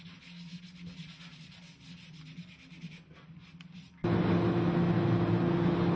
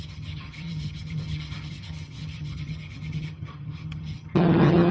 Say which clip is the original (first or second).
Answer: first